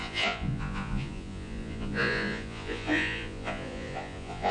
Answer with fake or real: fake